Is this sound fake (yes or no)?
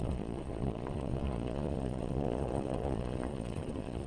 yes